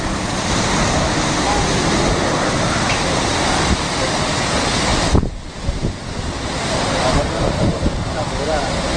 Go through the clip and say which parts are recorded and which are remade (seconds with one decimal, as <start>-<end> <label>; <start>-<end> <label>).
0.0-9.0 recorded